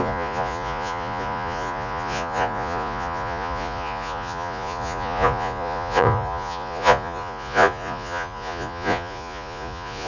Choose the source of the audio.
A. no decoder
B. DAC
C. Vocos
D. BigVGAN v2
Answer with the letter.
C